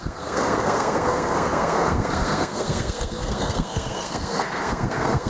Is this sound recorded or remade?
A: remade